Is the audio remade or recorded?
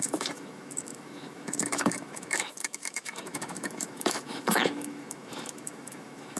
remade